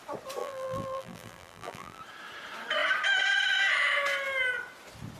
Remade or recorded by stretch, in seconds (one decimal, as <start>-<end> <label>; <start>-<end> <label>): 0.0-0.4 recorded; 0.4-2.0 remade; 2.0-5.2 recorded